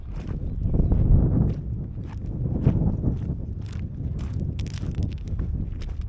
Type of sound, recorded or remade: recorded